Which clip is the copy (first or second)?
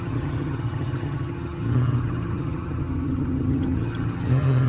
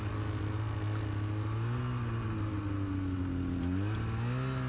first